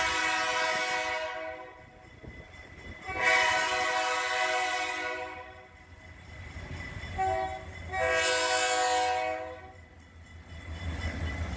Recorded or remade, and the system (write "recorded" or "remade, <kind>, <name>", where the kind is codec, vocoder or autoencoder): recorded